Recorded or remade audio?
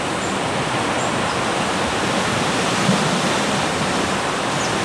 recorded